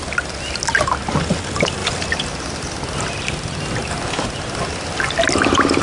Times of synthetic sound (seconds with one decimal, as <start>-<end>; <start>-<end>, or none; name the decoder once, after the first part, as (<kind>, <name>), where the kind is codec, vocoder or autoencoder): none